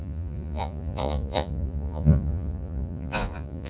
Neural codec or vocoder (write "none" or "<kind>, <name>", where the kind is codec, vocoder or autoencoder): vocoder, Vocos